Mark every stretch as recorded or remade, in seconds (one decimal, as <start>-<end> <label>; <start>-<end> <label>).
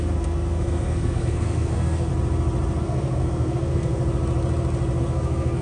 0.0-2.1 remade; 2.1-2.8 recorded; 2.8-4.0 remade; 4.0-5.0 recorded; 5.0-5.6 remade